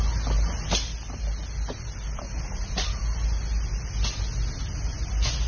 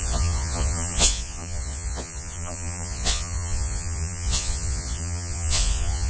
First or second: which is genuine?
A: first